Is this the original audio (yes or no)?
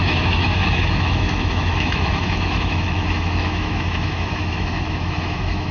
no